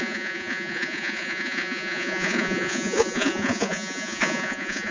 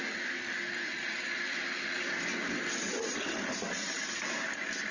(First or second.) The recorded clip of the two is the second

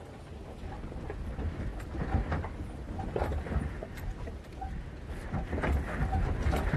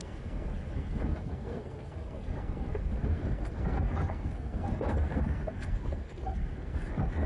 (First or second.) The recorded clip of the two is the first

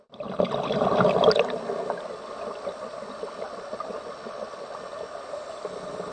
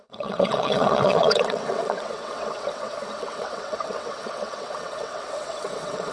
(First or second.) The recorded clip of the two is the first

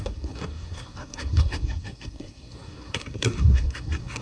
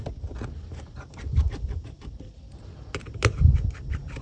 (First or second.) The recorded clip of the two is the second